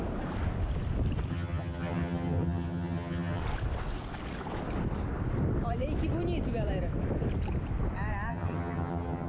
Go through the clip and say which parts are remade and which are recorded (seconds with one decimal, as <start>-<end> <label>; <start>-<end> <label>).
0.0-1.3 recorded; 1.3-3.4 remade; 3.4-8.3 recorded; 8.3-9.3 remade